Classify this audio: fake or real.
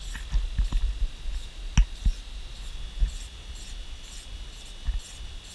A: real